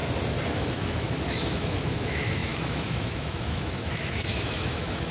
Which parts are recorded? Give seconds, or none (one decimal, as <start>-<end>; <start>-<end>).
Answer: 0.0-0.5